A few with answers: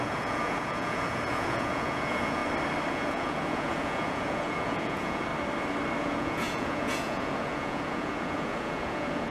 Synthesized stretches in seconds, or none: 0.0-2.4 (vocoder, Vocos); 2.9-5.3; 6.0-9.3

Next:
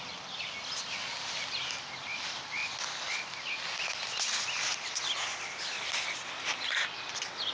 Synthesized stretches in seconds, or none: none

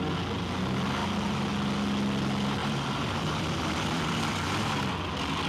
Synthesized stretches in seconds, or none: 1.0-1.5 (vocoder, BigVGAN v2); 2.6-4.7

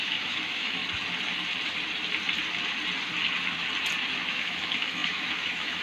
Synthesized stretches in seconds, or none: 0.0-0.8 (autoencoder, DAC-VAE); 4.3-5.8

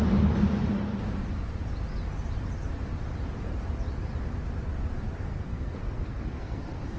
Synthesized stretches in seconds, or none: 5.3-7.0 (codec, SNAC)